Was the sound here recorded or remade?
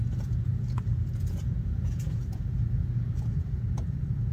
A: remade